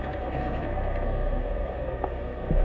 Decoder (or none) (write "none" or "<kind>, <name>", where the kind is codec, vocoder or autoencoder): codec, SNAC